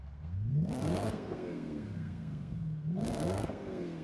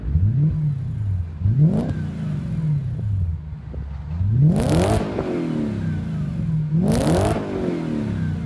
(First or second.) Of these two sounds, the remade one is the first